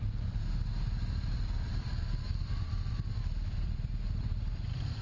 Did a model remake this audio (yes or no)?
yes